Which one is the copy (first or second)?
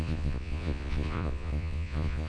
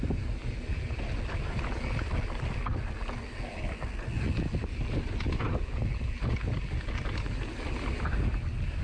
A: first